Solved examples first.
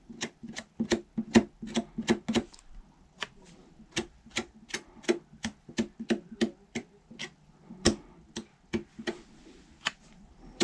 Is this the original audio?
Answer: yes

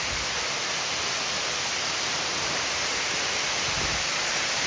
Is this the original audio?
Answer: yes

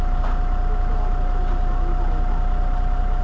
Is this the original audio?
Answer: yes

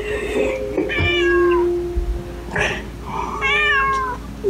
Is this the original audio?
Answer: yes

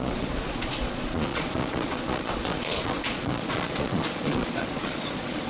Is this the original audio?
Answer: no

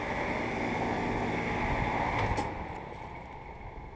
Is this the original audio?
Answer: yes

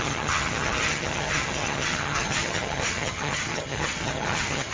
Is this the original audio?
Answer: no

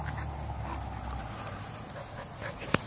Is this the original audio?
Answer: yes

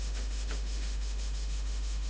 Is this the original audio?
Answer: no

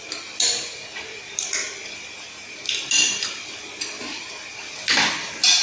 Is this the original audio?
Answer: yes